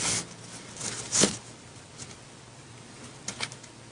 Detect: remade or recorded recorded